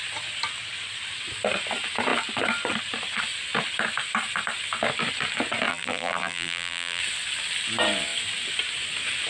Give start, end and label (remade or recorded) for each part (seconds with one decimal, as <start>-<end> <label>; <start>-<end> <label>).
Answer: 0.0-5.7 recorded; 5.7-7.0 remade; 7.0-9.3 recorded